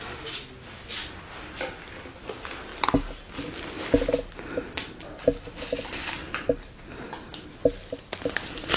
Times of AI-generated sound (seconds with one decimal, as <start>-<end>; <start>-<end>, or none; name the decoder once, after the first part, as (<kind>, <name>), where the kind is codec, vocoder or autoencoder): none